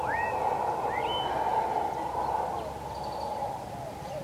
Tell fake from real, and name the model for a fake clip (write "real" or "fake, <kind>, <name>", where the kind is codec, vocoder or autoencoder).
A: real